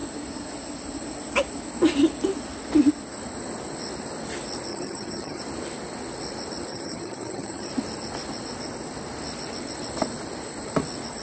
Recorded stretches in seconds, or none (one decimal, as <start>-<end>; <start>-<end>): 0.0-4.7; 5.4-6.7; 7.7-11.2